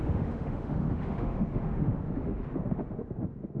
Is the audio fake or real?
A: fake